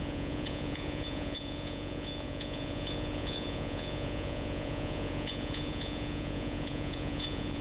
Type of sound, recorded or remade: remade